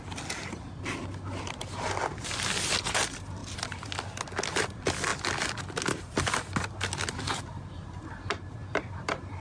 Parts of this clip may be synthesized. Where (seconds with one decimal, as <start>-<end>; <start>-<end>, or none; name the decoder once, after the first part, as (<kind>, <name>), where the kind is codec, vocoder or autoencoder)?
none